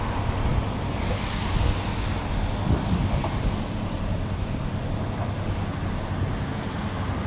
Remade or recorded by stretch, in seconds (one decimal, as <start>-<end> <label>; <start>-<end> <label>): 0.0-7.3 recorded